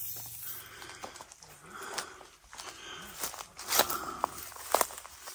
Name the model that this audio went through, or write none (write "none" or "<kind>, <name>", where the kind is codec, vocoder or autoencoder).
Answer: none